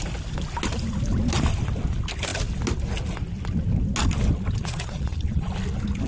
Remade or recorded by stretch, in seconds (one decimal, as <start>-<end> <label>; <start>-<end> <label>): 0.0-4.6 recorded; 4.6-5.5 remade; 5.5-6.1 recorded